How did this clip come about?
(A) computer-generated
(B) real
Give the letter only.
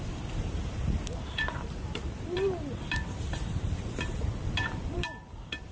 A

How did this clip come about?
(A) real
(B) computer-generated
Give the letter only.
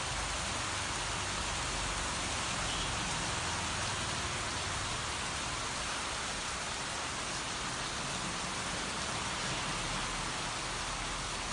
A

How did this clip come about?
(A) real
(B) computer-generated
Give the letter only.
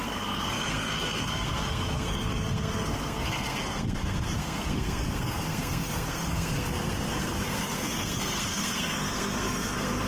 B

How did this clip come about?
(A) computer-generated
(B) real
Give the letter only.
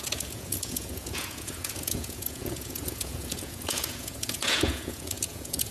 A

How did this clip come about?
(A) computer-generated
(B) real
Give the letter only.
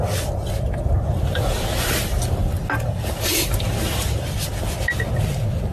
B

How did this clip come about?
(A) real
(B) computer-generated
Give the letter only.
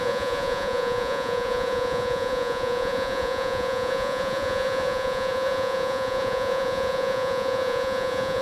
B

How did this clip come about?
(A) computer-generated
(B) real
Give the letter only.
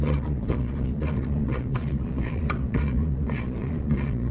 A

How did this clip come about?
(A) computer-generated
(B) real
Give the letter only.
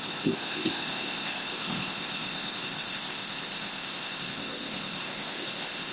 A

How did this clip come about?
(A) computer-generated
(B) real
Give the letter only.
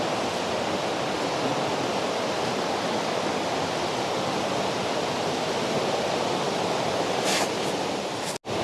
B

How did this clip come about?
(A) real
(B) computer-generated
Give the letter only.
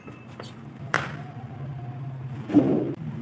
B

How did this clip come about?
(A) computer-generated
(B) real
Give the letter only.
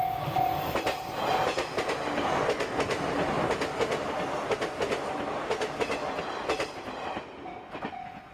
A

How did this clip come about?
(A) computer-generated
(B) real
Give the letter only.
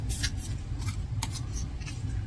B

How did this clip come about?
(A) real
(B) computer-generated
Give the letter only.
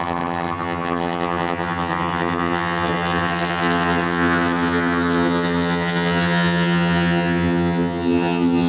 B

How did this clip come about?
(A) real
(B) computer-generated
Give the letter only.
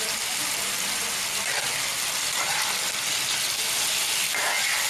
B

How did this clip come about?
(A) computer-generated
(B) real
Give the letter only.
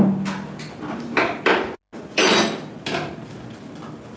B